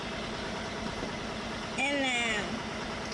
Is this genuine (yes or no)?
yes